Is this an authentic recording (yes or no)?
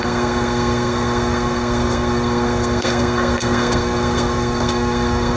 no